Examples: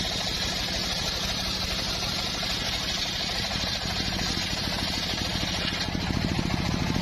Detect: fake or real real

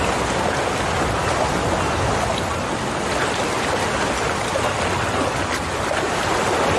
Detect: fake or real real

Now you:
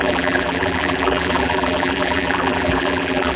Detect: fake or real fake